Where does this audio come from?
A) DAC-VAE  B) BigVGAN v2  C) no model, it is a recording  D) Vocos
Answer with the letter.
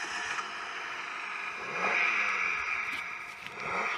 C